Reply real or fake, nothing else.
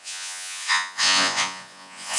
fake